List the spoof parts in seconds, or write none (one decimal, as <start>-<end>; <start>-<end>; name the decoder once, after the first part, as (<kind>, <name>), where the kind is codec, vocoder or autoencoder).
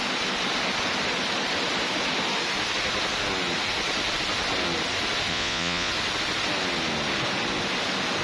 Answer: 5.3-5.9 (vocoder, Vocos)